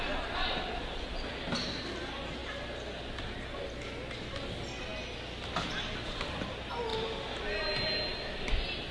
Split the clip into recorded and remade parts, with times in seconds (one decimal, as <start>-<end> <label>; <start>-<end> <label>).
0.0-8.9 recorded